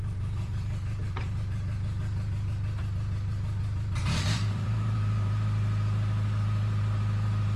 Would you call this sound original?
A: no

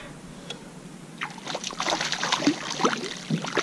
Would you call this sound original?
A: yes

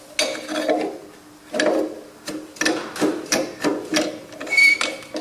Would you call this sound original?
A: yes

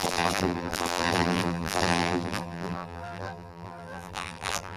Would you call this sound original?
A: no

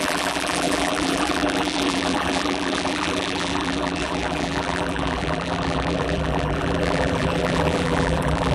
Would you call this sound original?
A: no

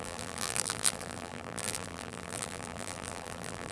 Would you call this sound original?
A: no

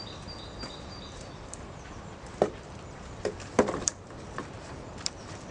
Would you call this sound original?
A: no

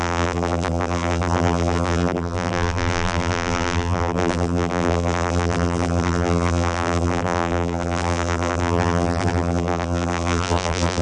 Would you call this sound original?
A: no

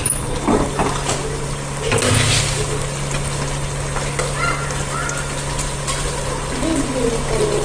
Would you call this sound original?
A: yes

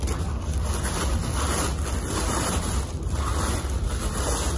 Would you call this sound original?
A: yes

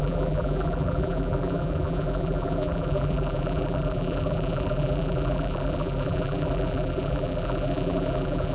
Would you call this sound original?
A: no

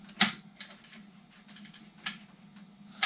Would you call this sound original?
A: yes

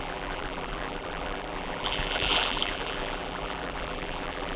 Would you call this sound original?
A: no